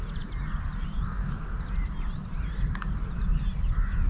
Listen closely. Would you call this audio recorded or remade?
recorded